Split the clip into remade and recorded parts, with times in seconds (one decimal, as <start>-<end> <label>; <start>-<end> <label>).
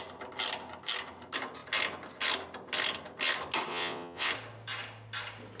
0.0-3.7 recorded; 3.7-4.3 remade; 4.3-5.6 recorded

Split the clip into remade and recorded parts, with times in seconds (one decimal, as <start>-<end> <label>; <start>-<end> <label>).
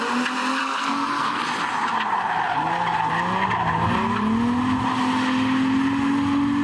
0.0-0.6 recorded; 0.6-1.4 remade; 1.4-6.6 recorded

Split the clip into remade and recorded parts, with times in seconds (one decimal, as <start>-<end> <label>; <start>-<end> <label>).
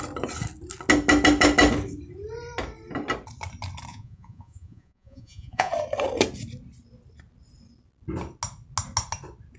0.0-3.9 recorded; 3.9-5.7 remade; 5.7-9.6 recorded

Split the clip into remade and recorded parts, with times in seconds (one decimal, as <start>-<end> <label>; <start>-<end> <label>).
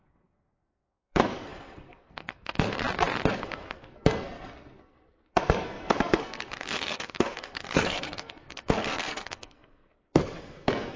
0.0-2.8 remade; 2.8-3.3 recorded; 3.3-11.0 remade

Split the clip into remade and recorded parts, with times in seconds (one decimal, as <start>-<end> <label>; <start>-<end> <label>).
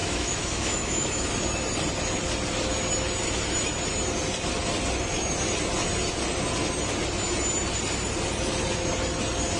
0.0-1.3 remade; 1.3-9.6 recorded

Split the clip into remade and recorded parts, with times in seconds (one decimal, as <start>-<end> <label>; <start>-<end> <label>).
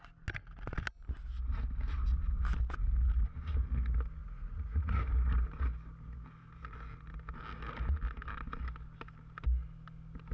0.0-4.2 recorded; 4.2-5.0 remade; 5.0-10.3 recorded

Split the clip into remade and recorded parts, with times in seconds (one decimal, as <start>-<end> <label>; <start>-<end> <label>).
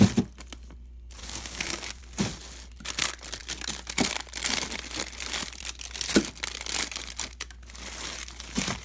0.0-1.2 recorded; 1.2-2.0 remade; 2.0-8.8 recorded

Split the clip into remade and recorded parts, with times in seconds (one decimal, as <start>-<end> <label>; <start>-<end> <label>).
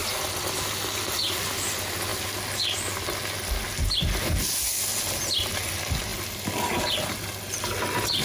0.0-0.6 remade; 0.6-6.1 recorded; 6.1-6.8 remade; 6.8-8.2 recorded